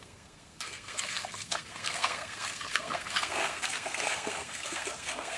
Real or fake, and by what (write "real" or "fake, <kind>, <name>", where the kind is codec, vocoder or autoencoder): fake, codec, SNAC